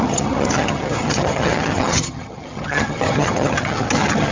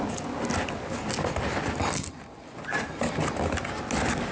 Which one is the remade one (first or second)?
first